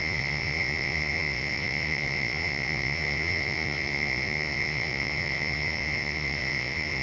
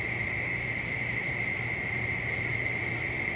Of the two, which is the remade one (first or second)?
first